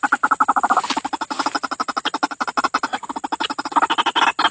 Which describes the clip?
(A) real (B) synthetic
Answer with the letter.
A